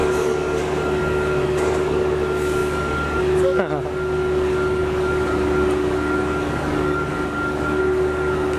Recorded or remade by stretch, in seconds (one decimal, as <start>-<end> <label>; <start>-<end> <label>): 0.0-8.6 remade